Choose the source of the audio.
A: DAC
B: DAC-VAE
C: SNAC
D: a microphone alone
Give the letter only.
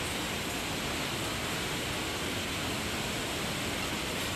D